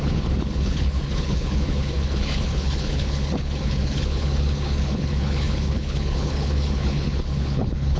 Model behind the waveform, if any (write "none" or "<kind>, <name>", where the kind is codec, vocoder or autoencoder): codec, HILCodec